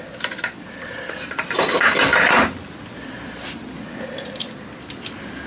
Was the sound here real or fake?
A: real